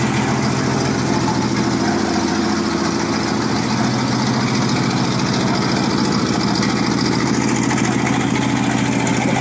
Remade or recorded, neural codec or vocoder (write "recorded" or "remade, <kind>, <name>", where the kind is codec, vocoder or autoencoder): recorded